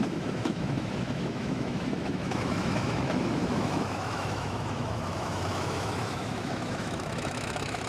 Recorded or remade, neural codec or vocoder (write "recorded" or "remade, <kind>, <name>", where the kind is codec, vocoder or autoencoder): remade, autoencoder, DAC-VAE